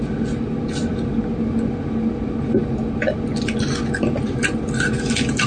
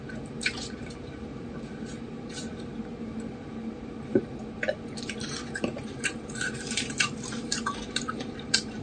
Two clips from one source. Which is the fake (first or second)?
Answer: second